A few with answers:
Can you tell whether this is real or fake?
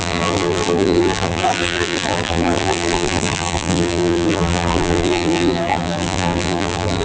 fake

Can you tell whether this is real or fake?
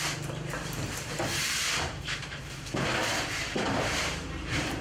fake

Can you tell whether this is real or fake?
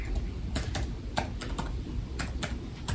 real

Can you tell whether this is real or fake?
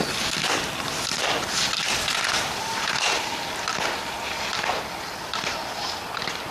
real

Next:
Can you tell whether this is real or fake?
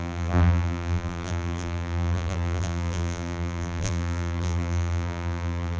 fake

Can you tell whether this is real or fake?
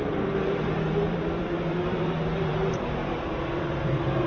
fake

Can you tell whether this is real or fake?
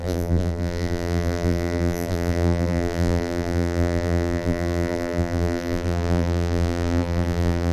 fake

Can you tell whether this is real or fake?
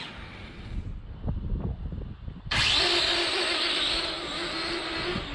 real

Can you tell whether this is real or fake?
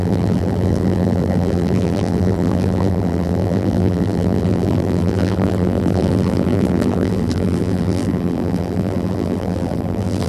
fake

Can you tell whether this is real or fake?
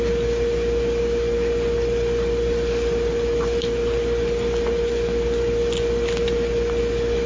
real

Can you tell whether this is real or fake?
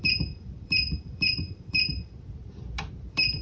fake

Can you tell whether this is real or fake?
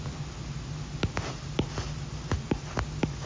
real